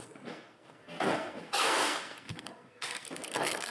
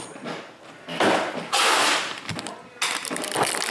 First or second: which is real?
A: second